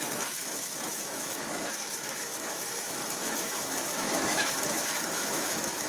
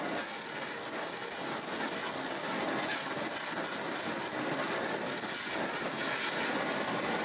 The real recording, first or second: second